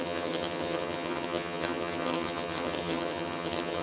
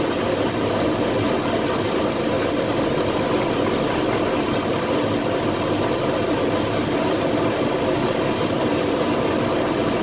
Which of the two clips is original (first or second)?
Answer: second